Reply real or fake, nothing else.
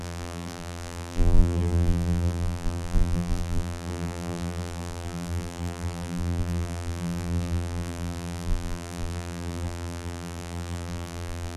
fake